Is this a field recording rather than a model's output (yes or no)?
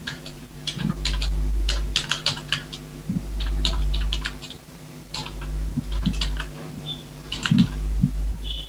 no